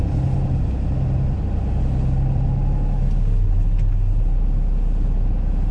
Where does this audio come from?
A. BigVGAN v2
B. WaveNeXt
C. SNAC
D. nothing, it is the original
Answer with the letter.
D